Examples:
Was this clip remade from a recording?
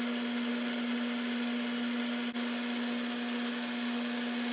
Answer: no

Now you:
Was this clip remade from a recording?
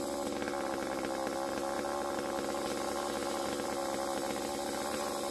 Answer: no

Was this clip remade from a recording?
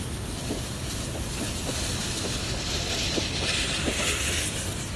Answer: no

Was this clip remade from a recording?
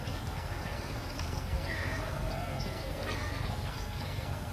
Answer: yes